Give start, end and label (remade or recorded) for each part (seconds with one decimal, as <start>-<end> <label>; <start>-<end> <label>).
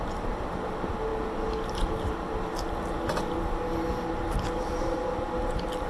0.0-5.9 recorded